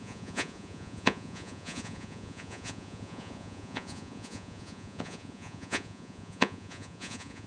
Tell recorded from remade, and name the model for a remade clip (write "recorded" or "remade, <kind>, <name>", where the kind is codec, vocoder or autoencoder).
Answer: remade, vocoder, Vocos